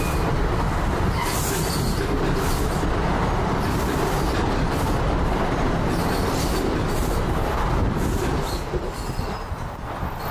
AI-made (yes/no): no